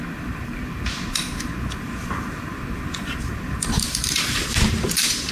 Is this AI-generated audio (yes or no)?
yes